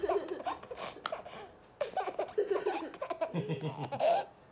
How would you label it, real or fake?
real